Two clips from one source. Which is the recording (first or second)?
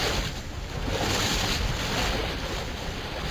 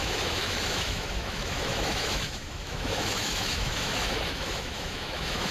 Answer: first